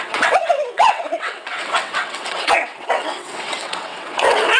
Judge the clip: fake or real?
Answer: fake